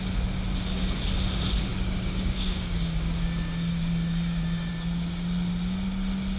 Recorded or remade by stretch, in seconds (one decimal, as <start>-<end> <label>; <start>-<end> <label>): 0.0-1.7 recorded; 1.7-4.7 remade; 4.7-6.4 recorded